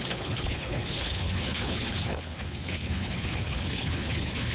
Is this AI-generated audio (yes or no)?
yes